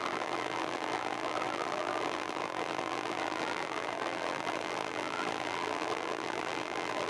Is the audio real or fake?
fake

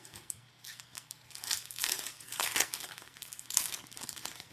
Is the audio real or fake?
fake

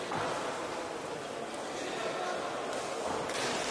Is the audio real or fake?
real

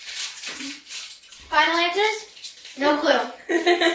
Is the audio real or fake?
fake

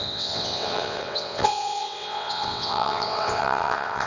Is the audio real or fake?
fake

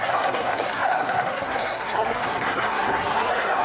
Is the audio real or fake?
fake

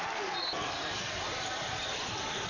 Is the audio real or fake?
fake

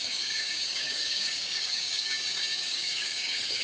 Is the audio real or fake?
fake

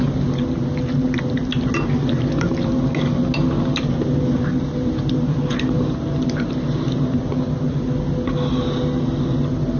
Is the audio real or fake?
real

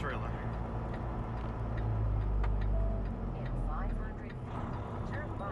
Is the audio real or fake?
real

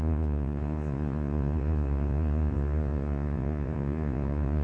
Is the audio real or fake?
fake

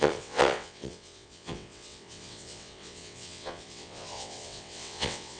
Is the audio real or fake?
fake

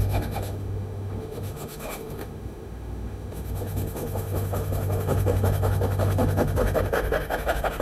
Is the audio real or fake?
fake